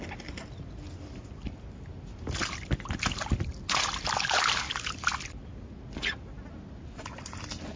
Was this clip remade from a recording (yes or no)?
no